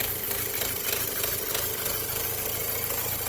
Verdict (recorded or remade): recorded